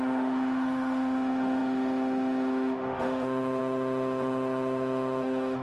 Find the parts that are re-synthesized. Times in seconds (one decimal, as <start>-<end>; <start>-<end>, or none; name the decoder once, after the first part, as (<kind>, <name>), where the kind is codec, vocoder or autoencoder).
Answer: 0.0-5.6 (autoencoder, DAC-VAE)